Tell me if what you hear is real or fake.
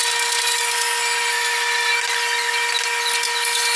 real